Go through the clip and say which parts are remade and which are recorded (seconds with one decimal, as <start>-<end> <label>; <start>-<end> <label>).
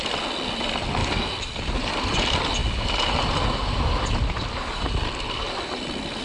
0.0-1.0 recorded; 1.0-2.1 remade; 2.1-6.2 recorded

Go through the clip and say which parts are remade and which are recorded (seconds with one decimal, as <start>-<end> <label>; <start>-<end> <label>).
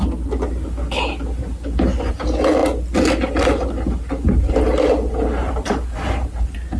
0.0-5.4 recorded; 5.4-6.3 remade; 6.3-6.8 recorded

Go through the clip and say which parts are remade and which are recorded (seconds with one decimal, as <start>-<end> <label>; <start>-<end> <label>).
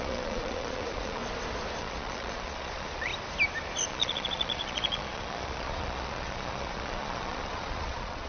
0.0-1.2 remade; 1.2-1.8 recorded; 1.8-3.1 remade; 3.1-3.9 recorded; 3.9-8.3 remade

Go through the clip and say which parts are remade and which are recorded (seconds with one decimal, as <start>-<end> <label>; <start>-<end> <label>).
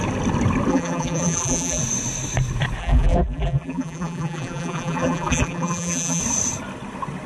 0.0-0.7 recorded; 0.7-1.8 remade; 1.8-2.8 recorded; 2.8-6.2 remade; 6.2-7.3 recorded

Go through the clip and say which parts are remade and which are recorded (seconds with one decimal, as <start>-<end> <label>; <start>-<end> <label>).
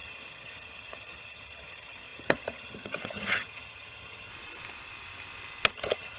0.0-4.3 remade; 4.3-5.7 recorded; 5.7-6.2 remade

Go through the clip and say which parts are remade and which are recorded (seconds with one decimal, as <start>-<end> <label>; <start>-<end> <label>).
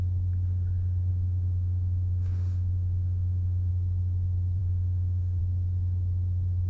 0.0-1.1 recorded; 1.1-3.7 remade; 3.7-4.6 recorded; 4.6-5.4 remade; 5.4-6.7 recorded